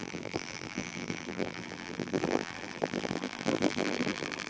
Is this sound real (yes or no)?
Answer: no